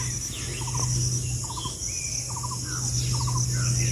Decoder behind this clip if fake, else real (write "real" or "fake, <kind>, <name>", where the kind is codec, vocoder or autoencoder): real